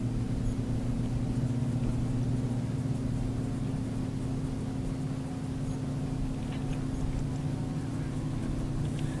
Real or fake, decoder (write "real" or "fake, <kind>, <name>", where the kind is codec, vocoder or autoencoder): real